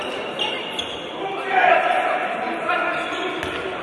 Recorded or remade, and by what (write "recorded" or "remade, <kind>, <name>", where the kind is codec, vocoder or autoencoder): recorded